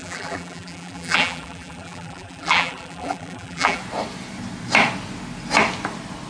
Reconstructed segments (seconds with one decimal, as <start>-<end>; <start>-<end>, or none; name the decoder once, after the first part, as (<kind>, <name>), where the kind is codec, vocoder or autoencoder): 0.0-3.8 (vocoder, BigVGAN v2)